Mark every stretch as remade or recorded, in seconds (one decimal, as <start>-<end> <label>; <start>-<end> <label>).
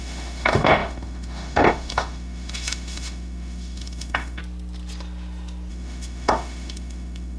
0.0-4.4 remade; 4.4-5.7 recorded; 5.7-7.4 remade